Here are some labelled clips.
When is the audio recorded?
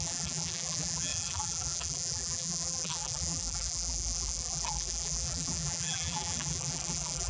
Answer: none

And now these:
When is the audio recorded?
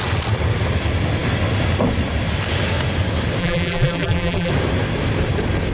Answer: 0.0-3.4; 4.5-5.7